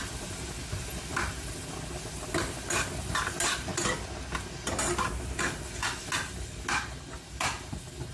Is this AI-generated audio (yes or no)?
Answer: no